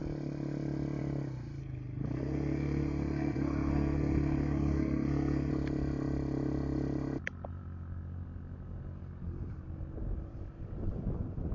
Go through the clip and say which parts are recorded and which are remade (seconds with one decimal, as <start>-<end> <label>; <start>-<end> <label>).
0.0-1.6 recorded; 1.6-5.5 remade; 5.5-11.5 recorded